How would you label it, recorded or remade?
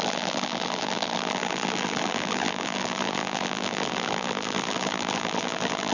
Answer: remade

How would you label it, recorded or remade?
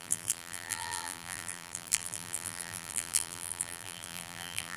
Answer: remade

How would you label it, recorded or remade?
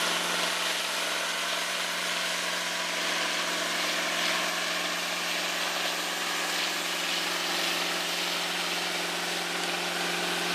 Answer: remade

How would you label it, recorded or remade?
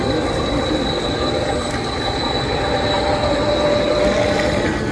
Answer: recorded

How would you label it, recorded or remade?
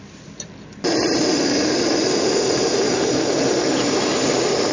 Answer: recorded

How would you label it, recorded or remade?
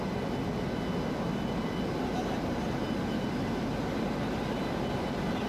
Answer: recorded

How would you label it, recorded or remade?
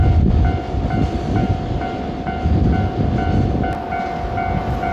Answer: recorded